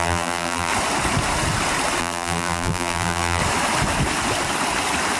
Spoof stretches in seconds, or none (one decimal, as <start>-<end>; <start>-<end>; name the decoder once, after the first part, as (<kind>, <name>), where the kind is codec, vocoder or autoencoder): 0.0-0.7 (vocoder, BigVGAN v2); 2.0-3.4